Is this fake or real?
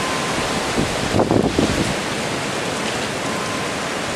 real